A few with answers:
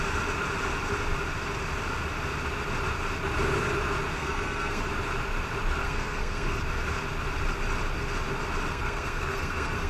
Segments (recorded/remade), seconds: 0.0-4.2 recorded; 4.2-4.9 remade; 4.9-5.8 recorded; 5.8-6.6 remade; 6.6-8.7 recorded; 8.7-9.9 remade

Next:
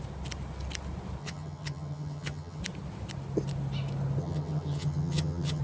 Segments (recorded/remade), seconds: 0.0-1.2 recorded; 1.2-2.6 remade; 2.6-4.2 recorded; 4.2-5.6 remade

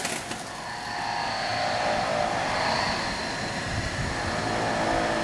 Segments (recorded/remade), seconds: 0.0-5.2 recorded

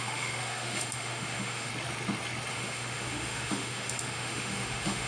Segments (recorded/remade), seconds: 0.0-1.7 remade; 1.7-2.5 recorded; 2.5-5.1 remade

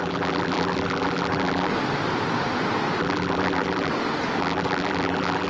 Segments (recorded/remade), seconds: 0.0-1.7 remade; 1.7-3.0 recorded; 3.0-3.9 remade; 3.9-4.4 recorded; 4.4-5.5 remade

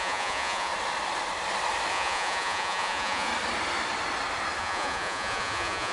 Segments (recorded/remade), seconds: 0.0-0.7 remade; 0.7-1.9 recorded; 1.9-3.3 remade; 3.3-4.6 recorded; 4.6-5.9 remade

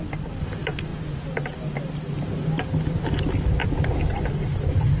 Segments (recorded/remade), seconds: 0.0-5.0 recorded